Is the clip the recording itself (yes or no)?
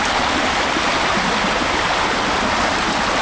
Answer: yes